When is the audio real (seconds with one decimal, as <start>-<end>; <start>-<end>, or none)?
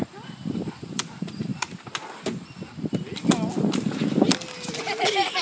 1.5-4.7